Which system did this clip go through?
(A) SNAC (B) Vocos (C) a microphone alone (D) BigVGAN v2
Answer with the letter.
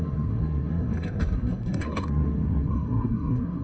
A